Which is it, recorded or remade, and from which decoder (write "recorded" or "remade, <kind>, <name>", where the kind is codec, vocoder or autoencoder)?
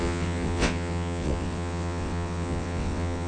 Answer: remade, vocoder, WaveNeXt